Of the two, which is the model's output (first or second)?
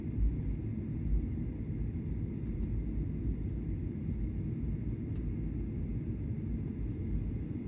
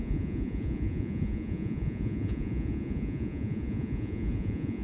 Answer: second